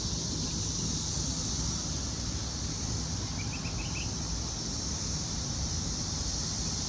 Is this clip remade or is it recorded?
recorded